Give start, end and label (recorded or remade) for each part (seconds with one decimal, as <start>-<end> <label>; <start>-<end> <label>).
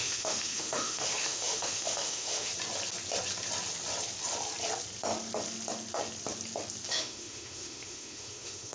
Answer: 0.0-2.5 remade; 2.5-6.9 recorded; 6.9-8.7 remade